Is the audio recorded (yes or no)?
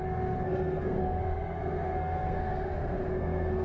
no